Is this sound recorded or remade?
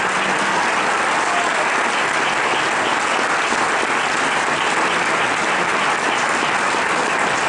recorded